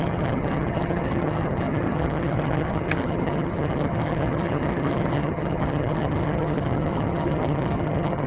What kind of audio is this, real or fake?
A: fake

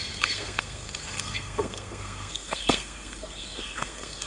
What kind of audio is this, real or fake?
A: fake